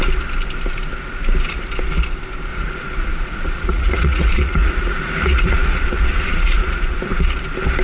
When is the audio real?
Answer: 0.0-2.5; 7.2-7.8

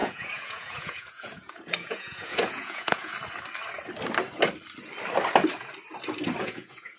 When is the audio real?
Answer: 3.1-6.4

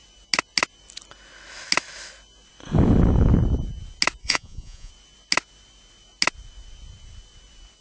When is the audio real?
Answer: 0.0-4.2; 4.9-7.8

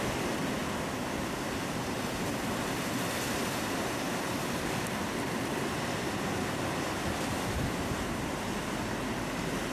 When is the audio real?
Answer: 0.0-9.7

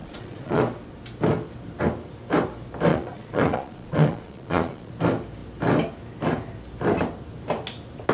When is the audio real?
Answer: 0.6-2.9; 4.9-8.1

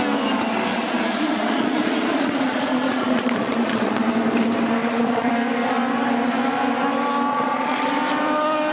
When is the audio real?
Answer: 0.0-0.7; 4.0-4.8; 5.3-7.3; 7.9-8.7